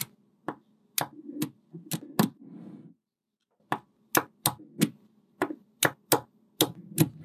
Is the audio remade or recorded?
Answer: recorded